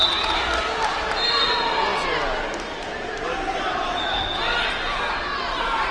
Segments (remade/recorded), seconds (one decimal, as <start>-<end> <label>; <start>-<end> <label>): 0.0-5.9 recorded